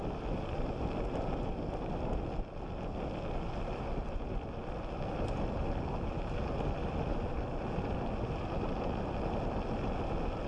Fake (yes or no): no